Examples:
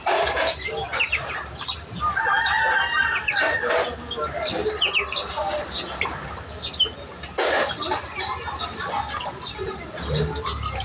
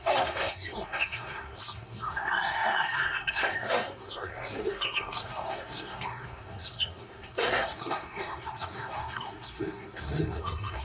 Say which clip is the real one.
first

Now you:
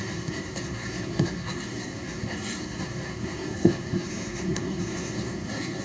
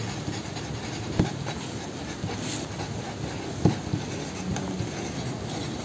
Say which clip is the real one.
second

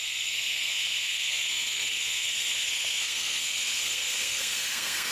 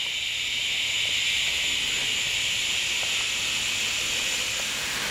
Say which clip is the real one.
second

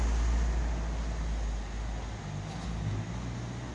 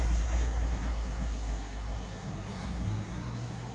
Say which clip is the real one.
first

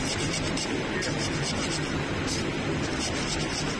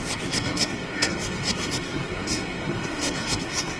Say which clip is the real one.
first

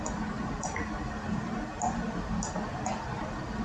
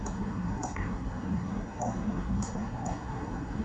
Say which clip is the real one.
first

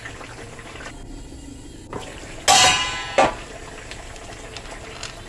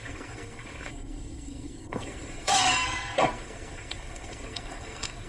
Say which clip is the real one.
first